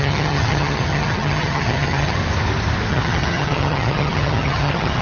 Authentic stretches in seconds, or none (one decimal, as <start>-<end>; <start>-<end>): 2.2-2.9